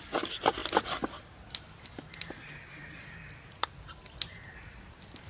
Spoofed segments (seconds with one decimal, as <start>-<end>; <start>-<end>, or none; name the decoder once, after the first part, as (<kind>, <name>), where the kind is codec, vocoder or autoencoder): none

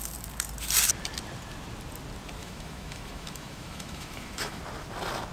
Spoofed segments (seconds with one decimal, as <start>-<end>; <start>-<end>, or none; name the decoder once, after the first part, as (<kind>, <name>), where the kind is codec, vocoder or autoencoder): 2.4-4.6 (autoencoder, DAC-VAE)

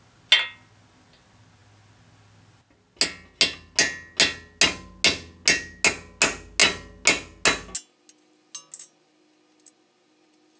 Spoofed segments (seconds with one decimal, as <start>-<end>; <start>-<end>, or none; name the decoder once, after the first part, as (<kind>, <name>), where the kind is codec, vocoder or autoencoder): none

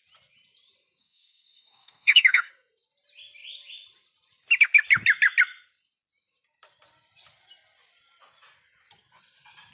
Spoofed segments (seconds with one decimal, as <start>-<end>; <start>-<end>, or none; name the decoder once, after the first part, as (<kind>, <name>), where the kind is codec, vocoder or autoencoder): 1.0-2.5 (codec, DAC)

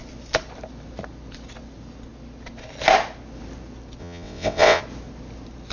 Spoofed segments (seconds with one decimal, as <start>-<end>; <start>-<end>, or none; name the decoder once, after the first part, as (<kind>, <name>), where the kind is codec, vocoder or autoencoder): 4.0-4.8 (vocoder, WaveNeXt)

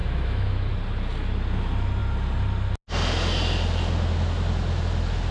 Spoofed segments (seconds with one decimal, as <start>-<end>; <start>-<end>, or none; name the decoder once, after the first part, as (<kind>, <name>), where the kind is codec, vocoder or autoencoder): 0.0-0.7 (autoencoder, DAC-VAE)

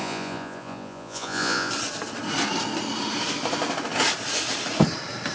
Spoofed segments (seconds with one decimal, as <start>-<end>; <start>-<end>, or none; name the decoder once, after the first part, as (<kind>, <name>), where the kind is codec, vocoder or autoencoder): 0.0-1.7 (vocoder, Vocos)